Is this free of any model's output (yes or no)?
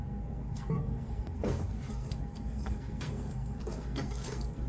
no